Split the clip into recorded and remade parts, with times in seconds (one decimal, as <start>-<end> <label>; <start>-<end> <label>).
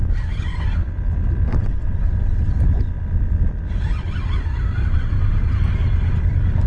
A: 0.0-1.5 recorded; 1.5-2.6 remade; 2.6-4.8 recorded; 4.8-5.6 remade; 5.6-6.7 recorded